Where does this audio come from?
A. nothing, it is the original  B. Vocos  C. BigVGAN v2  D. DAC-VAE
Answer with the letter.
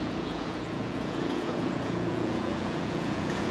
B